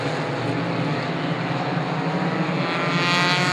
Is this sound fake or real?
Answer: real